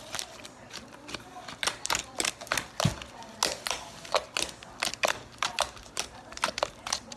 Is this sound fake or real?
real